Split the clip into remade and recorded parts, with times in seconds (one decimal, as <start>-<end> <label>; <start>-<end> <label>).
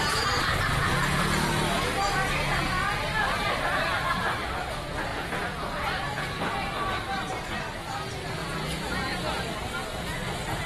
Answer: 0.0-5.1 recorded; 5.1-6.4 remade; 6.4-8.4 recorded; 8.4-9.2 remade; 9.2-9.9 recorded; 9.9-10.7 remade